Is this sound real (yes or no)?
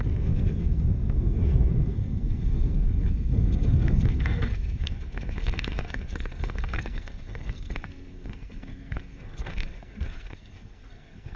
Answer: no